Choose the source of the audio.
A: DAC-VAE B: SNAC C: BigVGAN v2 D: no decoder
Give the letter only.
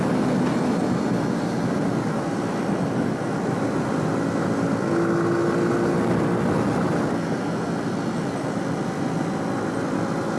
D